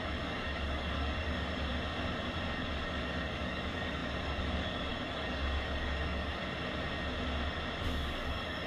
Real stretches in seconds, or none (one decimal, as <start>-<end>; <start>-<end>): 1.7-2.6; 6.4-7.8